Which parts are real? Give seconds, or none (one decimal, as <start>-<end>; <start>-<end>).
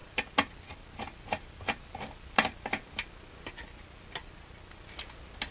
0.0-5.5